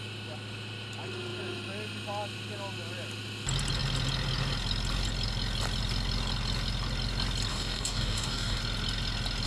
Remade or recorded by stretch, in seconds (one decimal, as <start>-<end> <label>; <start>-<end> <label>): 0.0-7.5 recorded; 7.5-8.6 remade; 8.6-9.5 recorded

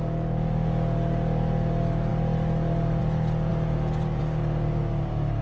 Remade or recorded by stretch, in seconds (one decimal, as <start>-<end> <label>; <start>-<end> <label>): 0.0-5.4 recorded

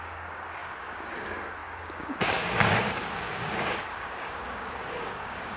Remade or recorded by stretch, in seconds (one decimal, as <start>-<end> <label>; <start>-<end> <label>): 0.0-5.6 remade